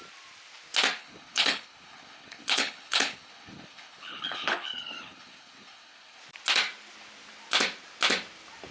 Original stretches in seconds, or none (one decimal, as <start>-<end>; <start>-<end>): 0.0-1.0; 6.2-8.7